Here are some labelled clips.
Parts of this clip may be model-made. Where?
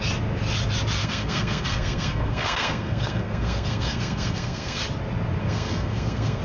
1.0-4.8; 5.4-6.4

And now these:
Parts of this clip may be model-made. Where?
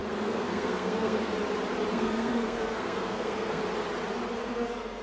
0.0-1.3; 1.9-3.6; 4.4-5.0